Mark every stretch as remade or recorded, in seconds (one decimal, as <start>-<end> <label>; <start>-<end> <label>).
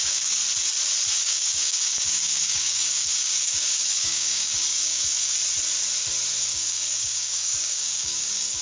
0.0-0.4 remade; 0.4-1.1 recorded; 1.1-5.4 remade; 5.4-6.4 recorded; 6.4-8.6 remade